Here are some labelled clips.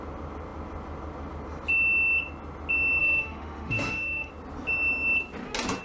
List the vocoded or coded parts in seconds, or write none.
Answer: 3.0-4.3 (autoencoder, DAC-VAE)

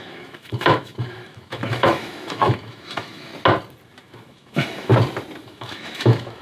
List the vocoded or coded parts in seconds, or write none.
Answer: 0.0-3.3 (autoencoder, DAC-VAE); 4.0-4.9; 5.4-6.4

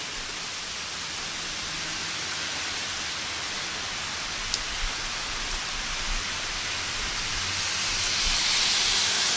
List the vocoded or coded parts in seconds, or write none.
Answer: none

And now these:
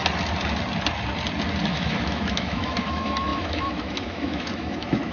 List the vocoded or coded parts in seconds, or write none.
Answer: 1.7-5.1 (autoencoder, DAC-VAE)

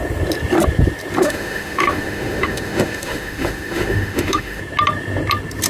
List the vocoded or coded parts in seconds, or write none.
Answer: 1.2-4.6 (autoencoder, DAC-VAE)

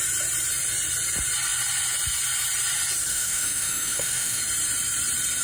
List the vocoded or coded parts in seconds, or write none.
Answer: 3.1-4.4 (autoencoder, DAC-VAE)

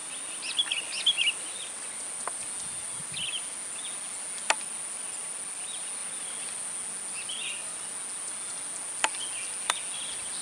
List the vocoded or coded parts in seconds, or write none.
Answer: none